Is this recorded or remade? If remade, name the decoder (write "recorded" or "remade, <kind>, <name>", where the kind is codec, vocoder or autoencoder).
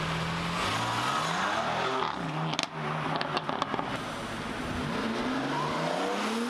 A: recorded